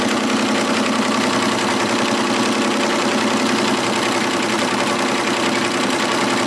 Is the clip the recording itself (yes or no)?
yes